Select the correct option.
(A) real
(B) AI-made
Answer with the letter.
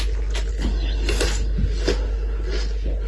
A